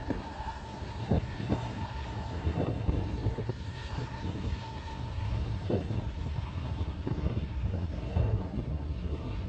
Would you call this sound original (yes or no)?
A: no